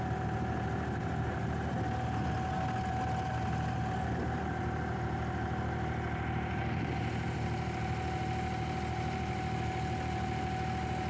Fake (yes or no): no